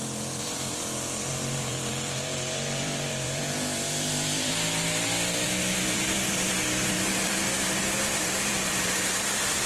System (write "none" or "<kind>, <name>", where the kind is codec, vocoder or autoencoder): vocoder, BigVGAN v2